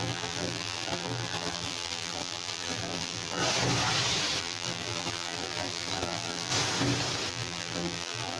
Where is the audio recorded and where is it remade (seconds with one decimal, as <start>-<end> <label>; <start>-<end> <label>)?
0.0-3.4 remade; 3.4-4.4 recorded; 4.4-6.5 remade; 6.5-7.3 recorded; 7.3-8.4 remade